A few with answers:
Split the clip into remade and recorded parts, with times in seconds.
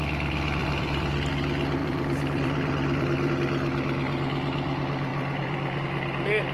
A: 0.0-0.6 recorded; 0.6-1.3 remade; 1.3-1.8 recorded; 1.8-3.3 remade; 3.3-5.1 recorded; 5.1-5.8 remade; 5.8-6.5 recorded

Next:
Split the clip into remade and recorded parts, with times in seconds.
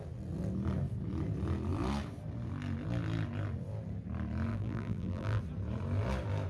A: 0.0-4.5 recorded; 4.5-5.4 remade; 5.4-6.5 recorded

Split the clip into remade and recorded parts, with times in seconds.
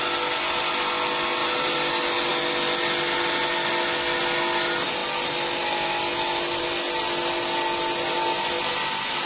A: 0.0-1.4 recorded; 1.4-1.9 remade; 1.9-9.3 recorded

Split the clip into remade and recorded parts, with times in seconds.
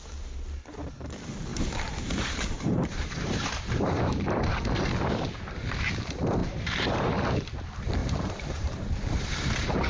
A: 0.0-1.5 recorded; 1.5-4.9 remade; 4.9-6.4 recorded; 6.4-7.1 remade; 7.1-8.0 recorded; 8.0-8.9 remade; 8.9-9.9 recorded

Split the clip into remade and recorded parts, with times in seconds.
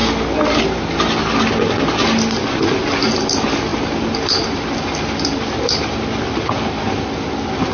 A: 0.0-3.7 recorded; 3.7-5.8 remade; 5.8-7.7 recorded